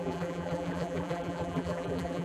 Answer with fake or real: fake